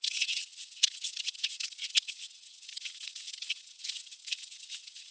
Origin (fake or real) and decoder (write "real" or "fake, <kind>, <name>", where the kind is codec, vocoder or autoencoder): fake, vocoder, WaveNeXt